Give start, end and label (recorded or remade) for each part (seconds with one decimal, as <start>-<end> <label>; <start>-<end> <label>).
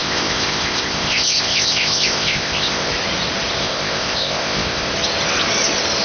0.0-2.9 remade; 2.9-3.6 recorded; 3.6-4.9 remade; 4.9-6.0 recorded